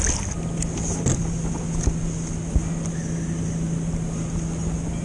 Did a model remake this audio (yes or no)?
no